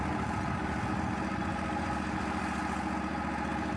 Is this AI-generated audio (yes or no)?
no